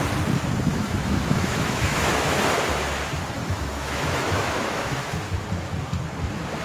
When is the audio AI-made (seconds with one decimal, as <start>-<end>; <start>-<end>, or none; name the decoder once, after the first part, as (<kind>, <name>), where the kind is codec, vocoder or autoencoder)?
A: 0.7-2.4 (autoencoder, DAC-VAE); 3.4-5.3